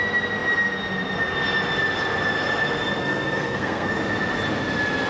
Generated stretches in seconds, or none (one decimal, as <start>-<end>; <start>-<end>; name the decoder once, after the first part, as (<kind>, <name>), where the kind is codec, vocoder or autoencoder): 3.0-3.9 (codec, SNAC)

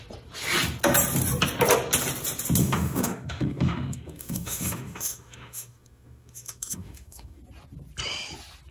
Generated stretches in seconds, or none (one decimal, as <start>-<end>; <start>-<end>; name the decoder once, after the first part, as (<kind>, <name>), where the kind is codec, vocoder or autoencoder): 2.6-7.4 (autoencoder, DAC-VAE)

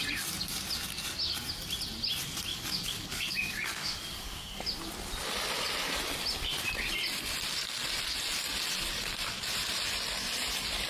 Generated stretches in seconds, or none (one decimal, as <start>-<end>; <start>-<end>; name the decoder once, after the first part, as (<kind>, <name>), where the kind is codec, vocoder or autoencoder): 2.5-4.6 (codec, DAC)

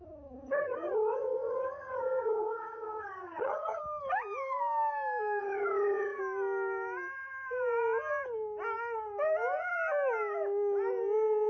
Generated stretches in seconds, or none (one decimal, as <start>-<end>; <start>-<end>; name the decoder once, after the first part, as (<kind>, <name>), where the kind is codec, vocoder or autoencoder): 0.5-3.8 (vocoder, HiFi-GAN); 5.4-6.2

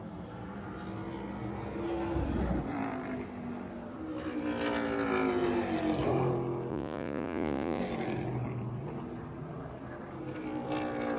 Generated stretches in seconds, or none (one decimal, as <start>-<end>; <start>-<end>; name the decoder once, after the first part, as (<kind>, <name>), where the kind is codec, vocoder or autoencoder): 6.7-7.8 (vocoder, Vocos)

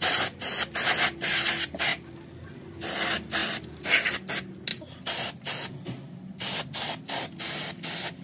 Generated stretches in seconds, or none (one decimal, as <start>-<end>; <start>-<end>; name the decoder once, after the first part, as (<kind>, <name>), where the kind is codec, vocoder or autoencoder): none